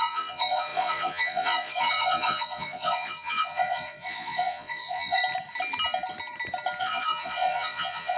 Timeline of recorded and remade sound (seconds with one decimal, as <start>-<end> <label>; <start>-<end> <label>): 0.0-5.2 remade; 5.2-6.8 recorded; 6.8-8.2 remade